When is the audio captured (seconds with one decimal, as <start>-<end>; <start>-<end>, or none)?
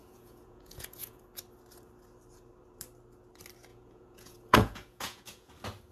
1.2-3.7; 5.5-5.9